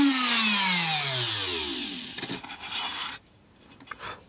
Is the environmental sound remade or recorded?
recorded